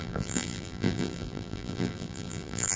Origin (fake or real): fake